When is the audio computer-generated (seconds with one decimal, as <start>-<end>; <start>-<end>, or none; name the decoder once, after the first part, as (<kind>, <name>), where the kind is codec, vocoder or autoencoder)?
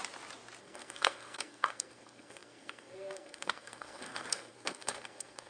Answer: 0.6-5.5 (codec, SNAC)